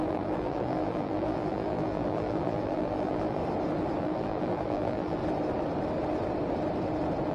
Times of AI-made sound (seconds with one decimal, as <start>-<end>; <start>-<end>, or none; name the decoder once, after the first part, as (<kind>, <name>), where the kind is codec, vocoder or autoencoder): 0.0-3.4 (vocoder, BigVGAN v2); 4.0-5.2